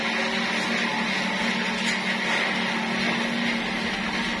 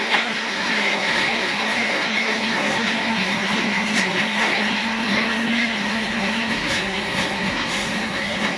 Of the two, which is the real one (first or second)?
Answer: first